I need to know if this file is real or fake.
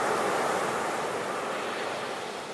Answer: real